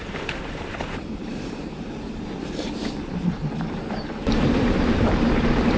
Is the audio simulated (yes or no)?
yes